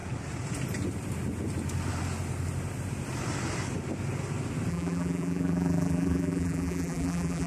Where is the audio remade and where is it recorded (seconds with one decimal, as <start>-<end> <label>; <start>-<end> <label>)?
0.0-4.7 recorded; 4.7-7.5 remade